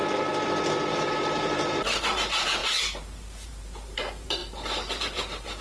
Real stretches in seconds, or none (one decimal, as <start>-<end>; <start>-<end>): 0.0-0.9; 4.4-5.0